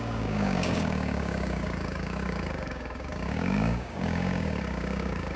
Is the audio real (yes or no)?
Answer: no